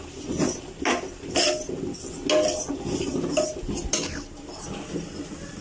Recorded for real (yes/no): yes